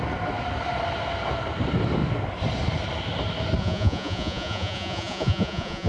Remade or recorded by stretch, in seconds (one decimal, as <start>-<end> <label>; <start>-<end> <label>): 0.0-3.6 recorded; 3.6-5.9 remade